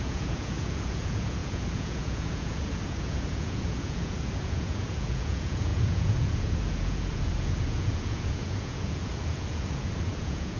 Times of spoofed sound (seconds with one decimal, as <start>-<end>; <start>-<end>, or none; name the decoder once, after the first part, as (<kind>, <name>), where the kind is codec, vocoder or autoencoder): 0.0-10.6 (vocoder, Vocos)